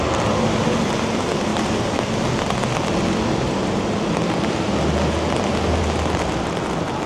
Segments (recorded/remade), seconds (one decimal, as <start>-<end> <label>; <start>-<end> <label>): 0.0-7.1 recorded